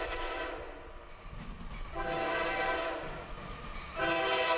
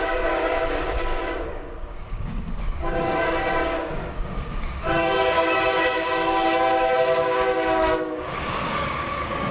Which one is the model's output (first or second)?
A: second